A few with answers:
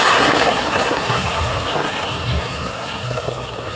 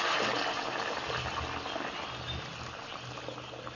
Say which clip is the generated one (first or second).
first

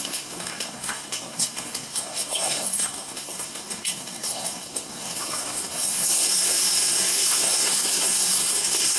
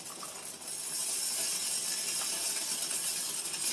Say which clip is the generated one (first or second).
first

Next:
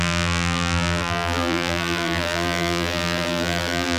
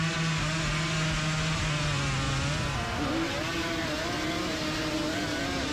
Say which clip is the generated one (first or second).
first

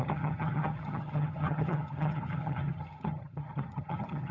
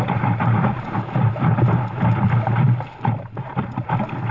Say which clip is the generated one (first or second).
first